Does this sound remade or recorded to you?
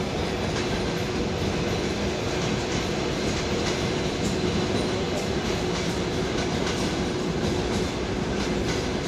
recorded